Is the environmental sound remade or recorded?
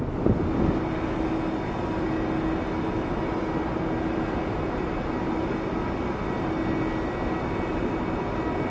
recorded